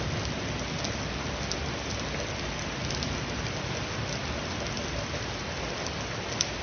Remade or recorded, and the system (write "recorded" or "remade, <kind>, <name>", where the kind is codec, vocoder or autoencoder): recorded